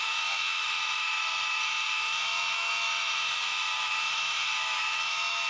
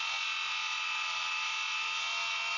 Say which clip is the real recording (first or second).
second